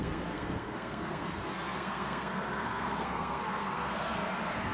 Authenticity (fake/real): fake